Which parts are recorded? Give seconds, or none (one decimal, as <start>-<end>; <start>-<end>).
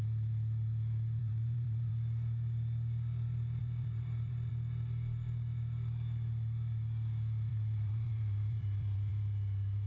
0.0-1.2; 1.9-3.6; 4.5-7.5; 9.1-9.9